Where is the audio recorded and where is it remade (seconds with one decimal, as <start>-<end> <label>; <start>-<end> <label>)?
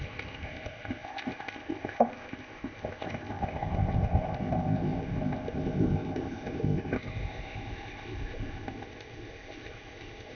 0.0-10.3 remade